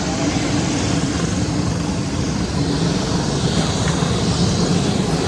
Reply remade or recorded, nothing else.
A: recorded